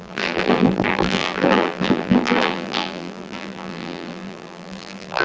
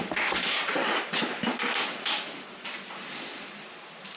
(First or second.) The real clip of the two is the second